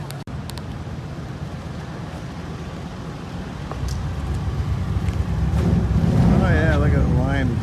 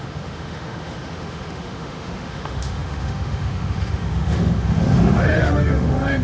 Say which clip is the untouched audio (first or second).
first